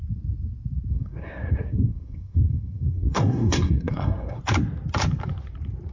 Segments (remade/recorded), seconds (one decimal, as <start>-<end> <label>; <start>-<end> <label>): 0.0-0.9 recorded; 0.9-4.4 remade; 4.4-5.9 recorded